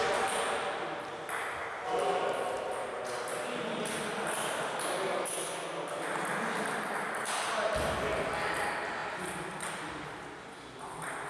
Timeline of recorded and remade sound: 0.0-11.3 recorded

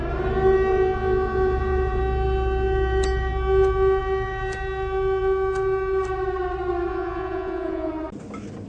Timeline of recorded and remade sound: 0.0-0.7 recorded; 0.7-2.0 remade; 2.0-6.9 recorded; 6.9-7.9 remade; 7.9-8.7 recorded

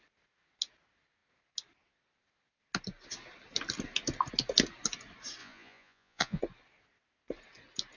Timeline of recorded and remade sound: 0.0-5.4 recorded; 5.4-6.4 remade; 6.4-8.0 recorded